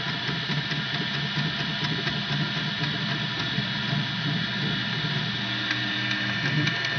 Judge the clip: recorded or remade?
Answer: recorded